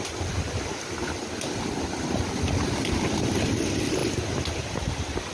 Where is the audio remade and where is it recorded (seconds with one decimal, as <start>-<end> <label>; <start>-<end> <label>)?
0.0-5.3 recorded